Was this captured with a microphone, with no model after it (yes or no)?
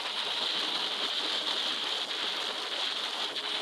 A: yes